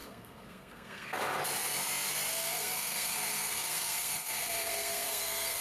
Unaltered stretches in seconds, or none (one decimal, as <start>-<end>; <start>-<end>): 1.2-2.3